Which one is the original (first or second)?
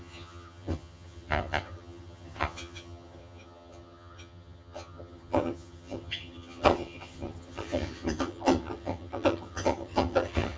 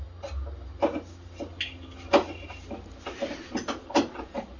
second